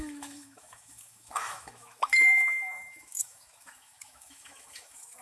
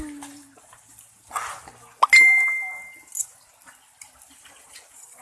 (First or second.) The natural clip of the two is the second